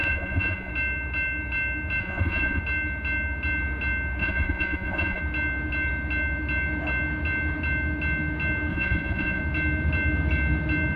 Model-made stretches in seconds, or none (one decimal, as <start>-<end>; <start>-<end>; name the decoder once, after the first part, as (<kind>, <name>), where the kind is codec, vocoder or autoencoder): 0.0-0.7 (vocoder, Vocos); 2.0-2.6; 4.2-5.2; 8.7-9.4